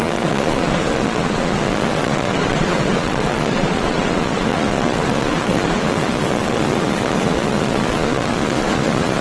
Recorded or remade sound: remade